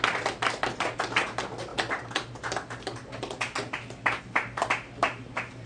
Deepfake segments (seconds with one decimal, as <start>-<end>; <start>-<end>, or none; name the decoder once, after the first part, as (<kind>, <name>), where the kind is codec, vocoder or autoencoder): none